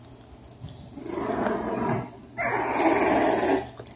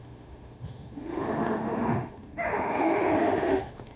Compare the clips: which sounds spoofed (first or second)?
second